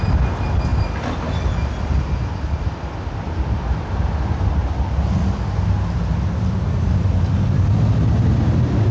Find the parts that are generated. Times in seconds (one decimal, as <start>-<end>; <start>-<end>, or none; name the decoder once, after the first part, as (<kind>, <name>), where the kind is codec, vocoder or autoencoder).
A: none